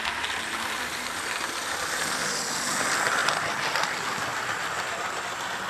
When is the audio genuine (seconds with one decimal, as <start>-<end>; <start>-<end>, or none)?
0.0-5.7